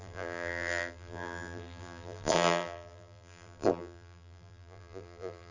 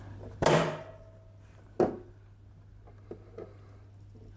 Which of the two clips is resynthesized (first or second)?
first